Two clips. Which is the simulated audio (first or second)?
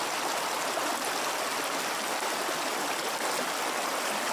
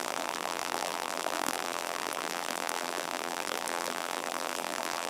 second